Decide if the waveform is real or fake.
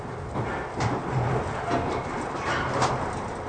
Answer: real